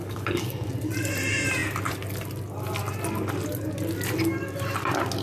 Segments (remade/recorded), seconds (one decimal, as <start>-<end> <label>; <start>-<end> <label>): 0.0-0.7 remade; 0.7-5.2 recorded